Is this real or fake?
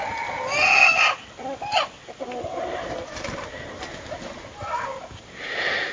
real